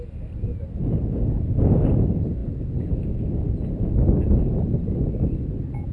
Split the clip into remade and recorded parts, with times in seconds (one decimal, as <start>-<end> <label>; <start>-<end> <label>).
0.0-5.9 recorded